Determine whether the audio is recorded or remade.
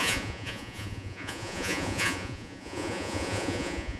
remade